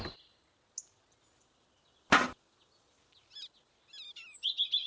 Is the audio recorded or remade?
recorded